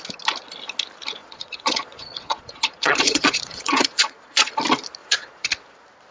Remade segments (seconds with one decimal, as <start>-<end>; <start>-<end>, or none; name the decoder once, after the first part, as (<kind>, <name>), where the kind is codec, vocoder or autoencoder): 1.2-4.5 (vocoder, Vocos); 5.0-5.5